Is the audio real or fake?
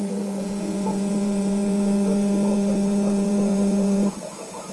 fake